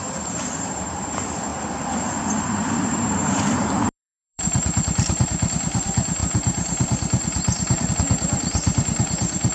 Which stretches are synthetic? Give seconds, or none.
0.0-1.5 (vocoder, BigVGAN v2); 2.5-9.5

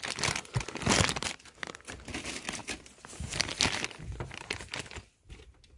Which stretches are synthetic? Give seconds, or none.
none